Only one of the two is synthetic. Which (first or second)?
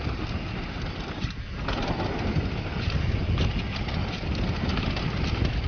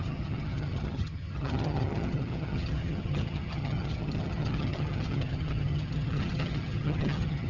second